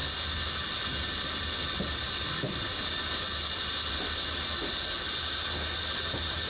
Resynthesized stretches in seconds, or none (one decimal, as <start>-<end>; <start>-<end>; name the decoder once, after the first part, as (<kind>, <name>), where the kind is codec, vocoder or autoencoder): none

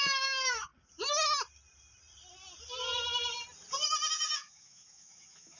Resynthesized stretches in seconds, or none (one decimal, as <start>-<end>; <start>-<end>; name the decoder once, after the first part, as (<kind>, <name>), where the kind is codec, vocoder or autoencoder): 0.0-0.7 (autoencoder, DAC-VAE); 4.1-5.6

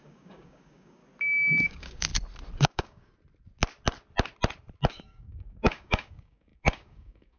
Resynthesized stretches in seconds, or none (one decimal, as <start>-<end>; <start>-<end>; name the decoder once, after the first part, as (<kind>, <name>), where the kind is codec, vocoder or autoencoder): 0.0-1.0 (codec, DAC); 1.6-2.1; 2.6-3.1; 4.9-7.4

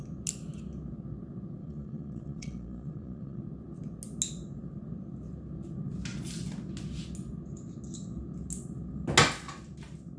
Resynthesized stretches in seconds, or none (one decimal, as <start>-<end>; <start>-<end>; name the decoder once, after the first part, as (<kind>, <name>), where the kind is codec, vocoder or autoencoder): 1.6-3.4 (vocoder, Vocos)

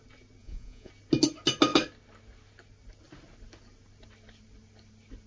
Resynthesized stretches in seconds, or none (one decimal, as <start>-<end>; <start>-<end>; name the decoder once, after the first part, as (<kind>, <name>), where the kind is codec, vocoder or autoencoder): 0.4-0.9 (vocoder, Vocos)

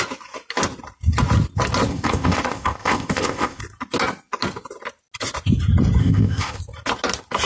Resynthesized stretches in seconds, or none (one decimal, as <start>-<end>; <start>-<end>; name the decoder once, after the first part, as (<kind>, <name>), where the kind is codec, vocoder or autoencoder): 1.9-3.6 (codec, ZipCodec); 6.0-6.6

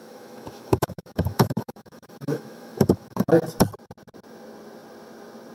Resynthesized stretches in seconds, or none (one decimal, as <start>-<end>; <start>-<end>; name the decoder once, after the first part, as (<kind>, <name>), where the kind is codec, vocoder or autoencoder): 0.0-3.3 (autoencoder, DAC-VAE)